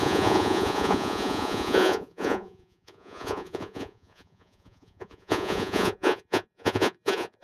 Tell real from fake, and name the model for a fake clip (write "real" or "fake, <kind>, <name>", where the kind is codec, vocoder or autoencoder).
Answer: fake, vocoder, Vocos